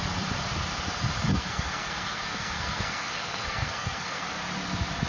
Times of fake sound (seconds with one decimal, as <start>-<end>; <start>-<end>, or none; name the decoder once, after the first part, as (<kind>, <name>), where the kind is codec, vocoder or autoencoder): 1.3-4.4 (codec, SNAC)